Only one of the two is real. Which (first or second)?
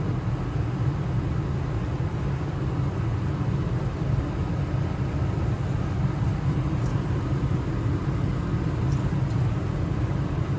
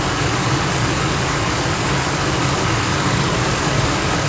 first